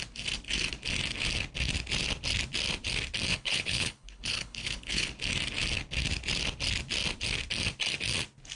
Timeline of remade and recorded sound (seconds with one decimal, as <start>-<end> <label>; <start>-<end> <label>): 0.0-3.3 recorded; 3.3-5.1 remade; 5.1-8.6 recorded